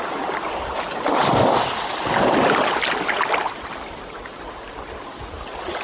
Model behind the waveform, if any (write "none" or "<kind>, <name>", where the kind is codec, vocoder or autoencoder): none